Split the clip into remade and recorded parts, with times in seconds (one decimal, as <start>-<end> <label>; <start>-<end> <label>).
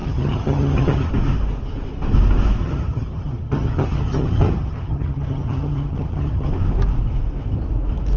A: 0.0-1.1 remade; 1.1-2.6 recorded; 2.6-6.5 remade; 6.5-8.2 recorded